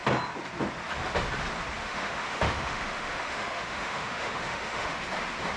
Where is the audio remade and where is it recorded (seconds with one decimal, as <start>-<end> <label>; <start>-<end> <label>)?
0.0-1.8 recorded; 1.8-5.0 remade; 5.0-5.6 recorded